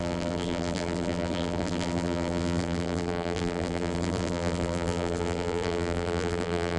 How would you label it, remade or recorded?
remade